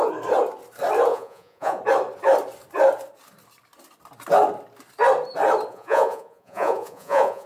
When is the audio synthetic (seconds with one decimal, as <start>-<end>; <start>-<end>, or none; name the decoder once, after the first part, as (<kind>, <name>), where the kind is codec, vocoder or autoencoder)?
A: 1.1-1.8 (vocoder, Vocos); 5.7-7.5